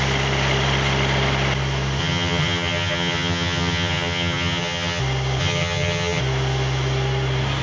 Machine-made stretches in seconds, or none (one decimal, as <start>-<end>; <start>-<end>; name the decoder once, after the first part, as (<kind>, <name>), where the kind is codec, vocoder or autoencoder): 2.0-5.0 (vocoder, HiFi-GAN); 5.4-6.2